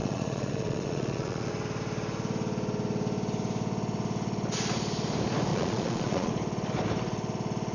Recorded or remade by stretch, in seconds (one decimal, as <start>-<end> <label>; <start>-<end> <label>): 0.0-1.5 remade; 1.5-5.5 recorded; 5.5-6.3 remade; 6.3-7.7 recorded